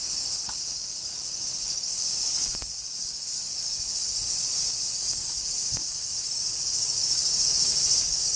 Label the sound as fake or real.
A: fake